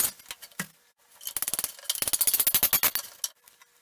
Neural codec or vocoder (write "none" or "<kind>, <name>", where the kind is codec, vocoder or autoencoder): none